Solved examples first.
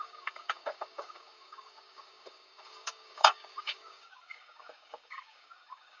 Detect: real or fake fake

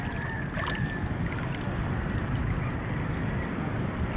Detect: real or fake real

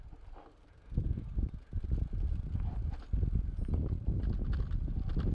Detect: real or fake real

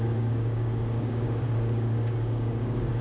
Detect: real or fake fake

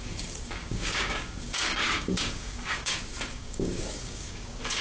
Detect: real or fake fake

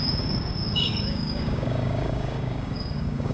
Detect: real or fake fake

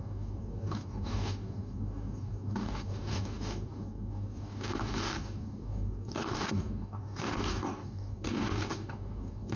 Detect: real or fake fake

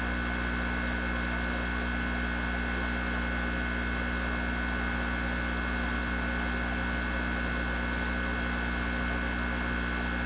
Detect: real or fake real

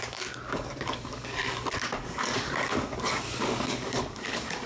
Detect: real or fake fake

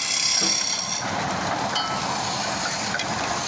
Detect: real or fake real